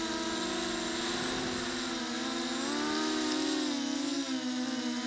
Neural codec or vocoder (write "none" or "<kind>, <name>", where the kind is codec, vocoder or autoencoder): none